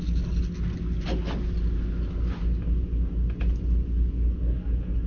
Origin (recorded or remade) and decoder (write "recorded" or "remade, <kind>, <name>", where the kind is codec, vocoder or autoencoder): recorded